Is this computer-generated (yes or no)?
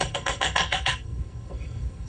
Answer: yes